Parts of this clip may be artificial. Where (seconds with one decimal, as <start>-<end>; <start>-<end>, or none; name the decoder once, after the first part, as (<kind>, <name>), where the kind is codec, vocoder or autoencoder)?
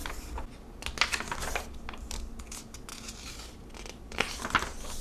none